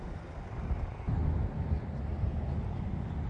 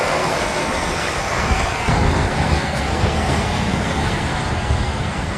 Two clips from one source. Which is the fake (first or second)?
second